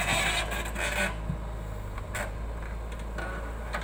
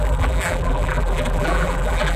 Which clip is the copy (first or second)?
second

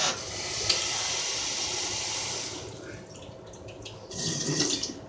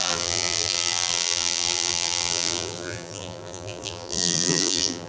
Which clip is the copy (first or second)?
second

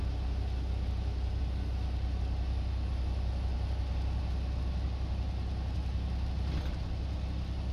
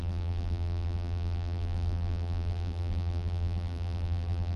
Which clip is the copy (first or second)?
second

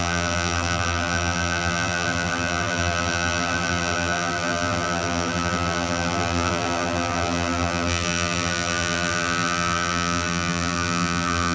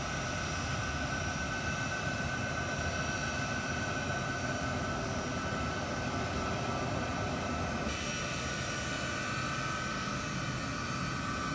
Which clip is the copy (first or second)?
first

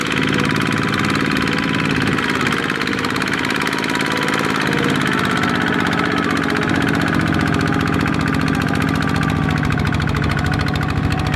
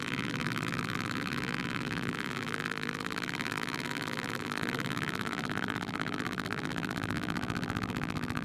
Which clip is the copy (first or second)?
second